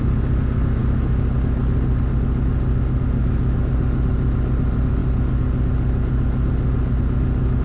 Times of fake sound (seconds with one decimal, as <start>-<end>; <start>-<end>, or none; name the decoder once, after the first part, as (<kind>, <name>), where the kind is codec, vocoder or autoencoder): none